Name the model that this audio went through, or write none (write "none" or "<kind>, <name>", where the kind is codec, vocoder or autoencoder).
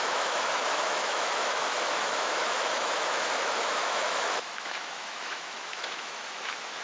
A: autoencoder, DAC-VAE